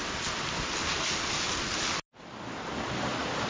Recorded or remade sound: recorded